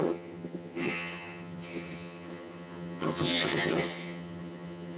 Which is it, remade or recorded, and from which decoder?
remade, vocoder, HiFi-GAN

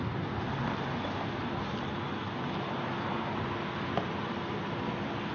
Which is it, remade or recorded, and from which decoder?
recorded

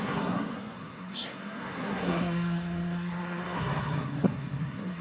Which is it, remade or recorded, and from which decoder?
remade, codec, SNAC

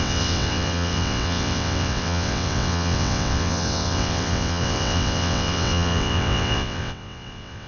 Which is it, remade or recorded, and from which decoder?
remade, vocoder, WaveNeXt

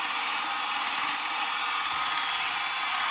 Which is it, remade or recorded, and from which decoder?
recorded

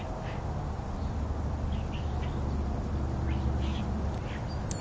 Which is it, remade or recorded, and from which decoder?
recorded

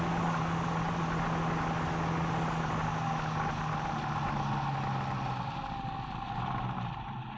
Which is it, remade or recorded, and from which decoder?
recorded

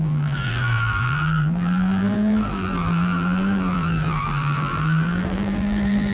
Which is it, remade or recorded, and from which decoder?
remade, vocoder, BigVGAN v2